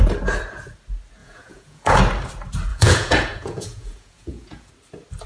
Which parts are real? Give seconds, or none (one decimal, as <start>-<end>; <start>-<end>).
0.0-1.2; 2.0-2.7; 4.7-5.3